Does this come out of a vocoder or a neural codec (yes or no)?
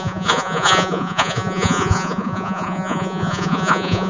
yes